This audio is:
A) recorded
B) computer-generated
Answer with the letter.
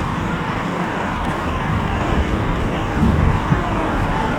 B